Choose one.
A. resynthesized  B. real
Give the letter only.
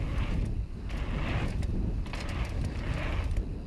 B